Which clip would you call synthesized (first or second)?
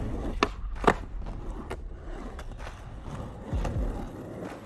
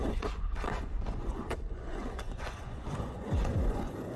second